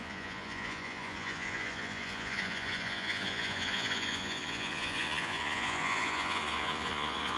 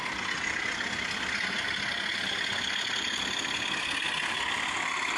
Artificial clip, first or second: first